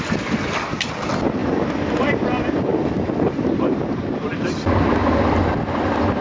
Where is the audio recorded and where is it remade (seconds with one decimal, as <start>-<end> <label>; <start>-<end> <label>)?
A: 0.0-6.2 recorded